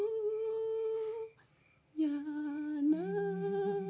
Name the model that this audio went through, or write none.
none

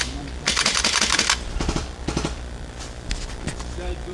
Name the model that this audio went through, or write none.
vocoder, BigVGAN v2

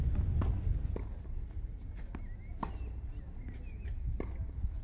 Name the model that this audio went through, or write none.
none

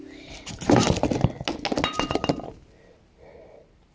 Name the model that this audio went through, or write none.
none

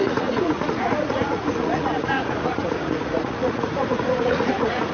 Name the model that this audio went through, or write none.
vocoder, Vocos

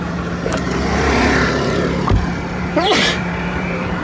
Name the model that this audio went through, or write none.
vocoder, BigVGAN v2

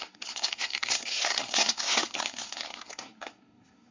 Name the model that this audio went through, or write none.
codec, SNAC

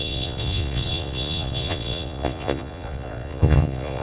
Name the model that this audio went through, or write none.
vocoder, Vocos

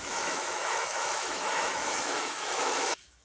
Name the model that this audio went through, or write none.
autoencoder, DAC-VAE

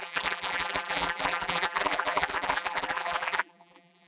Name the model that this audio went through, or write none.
vocoder, BigVGAN v2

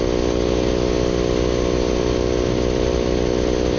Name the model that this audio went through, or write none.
none